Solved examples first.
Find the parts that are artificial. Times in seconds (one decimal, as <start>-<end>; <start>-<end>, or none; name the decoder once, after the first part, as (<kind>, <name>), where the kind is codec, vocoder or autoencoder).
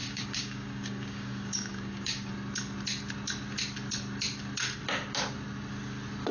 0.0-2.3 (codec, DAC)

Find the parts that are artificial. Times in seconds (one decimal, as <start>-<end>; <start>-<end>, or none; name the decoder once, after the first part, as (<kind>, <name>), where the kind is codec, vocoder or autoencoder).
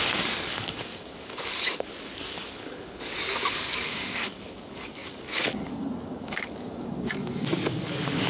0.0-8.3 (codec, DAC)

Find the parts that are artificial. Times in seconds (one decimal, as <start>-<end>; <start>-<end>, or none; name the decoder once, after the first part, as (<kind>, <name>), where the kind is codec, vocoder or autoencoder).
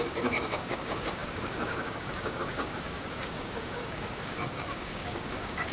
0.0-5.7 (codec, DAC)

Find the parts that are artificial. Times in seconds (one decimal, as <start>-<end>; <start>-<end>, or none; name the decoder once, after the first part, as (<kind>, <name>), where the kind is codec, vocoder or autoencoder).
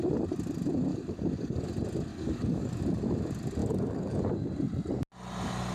0.9-1.7 (codec, DAC); 2.1-2.8; 3.6-4.3